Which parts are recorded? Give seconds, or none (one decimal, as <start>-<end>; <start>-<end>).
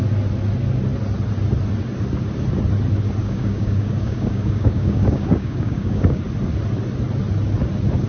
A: 0.0-3.2; 6.2-8.1